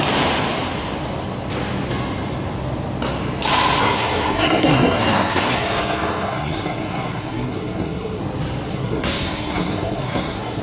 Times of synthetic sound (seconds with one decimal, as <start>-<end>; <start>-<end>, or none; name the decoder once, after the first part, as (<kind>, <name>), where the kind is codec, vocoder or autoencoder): 3.8-8.2 (codec, SNAC); 8.7-10.6